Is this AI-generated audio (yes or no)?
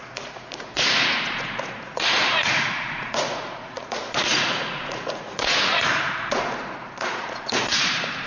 yes